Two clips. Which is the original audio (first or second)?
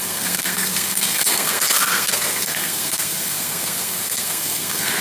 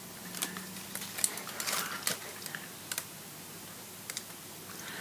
second